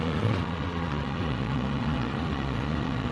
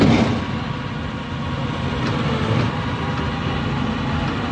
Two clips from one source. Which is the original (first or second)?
second